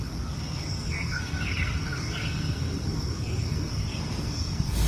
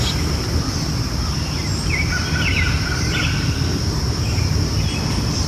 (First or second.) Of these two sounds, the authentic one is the second